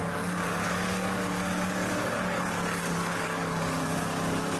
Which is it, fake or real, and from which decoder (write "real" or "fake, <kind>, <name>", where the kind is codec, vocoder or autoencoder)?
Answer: fake, codec, DAC